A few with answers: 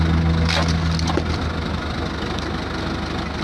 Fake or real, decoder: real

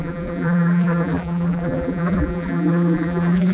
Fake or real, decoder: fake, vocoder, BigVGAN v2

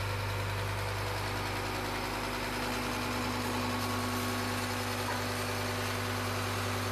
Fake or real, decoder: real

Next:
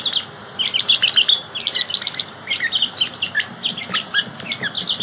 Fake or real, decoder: real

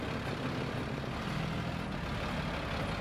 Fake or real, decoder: real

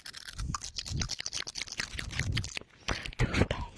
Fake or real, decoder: real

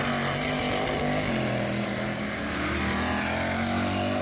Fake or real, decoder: real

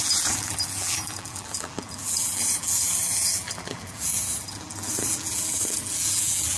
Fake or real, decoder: fake, vocoder, BigVGAN v2